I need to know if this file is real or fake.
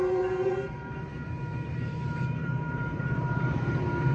fake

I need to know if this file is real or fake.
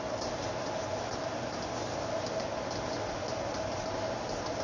real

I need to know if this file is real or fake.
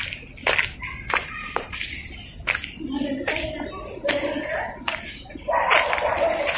real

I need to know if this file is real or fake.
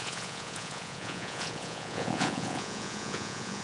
fake